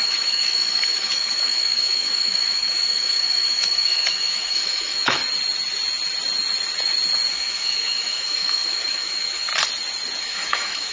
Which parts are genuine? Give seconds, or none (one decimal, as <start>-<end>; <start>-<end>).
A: 5.2-7.3; 9.5-10.2